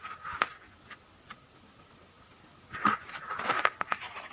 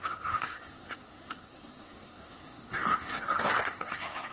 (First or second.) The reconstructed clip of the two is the second